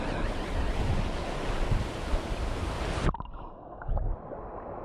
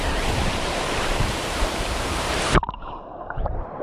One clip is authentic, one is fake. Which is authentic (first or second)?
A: first